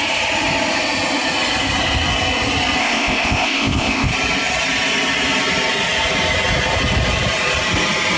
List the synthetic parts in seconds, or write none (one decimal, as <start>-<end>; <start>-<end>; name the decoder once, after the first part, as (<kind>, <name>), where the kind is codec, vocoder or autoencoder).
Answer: 2.8-4.1 (codec, ZipCodec)